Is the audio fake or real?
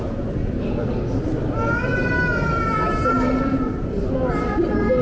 real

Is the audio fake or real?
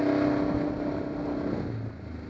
real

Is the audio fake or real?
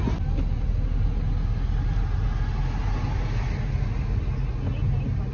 real